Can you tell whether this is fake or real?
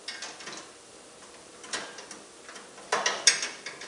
real